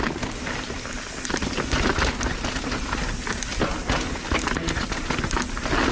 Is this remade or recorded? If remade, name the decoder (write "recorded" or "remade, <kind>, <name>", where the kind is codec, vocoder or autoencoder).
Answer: recorded